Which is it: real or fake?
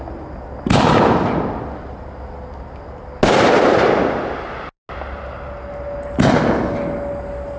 real